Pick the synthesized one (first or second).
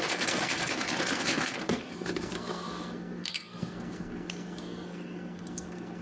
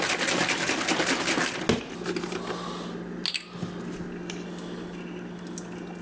first